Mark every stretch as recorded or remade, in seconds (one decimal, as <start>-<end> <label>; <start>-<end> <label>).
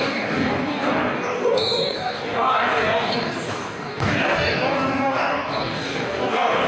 0.0-6.7 remade